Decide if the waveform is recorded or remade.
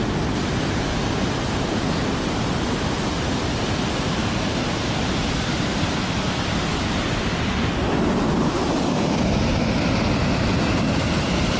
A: recorded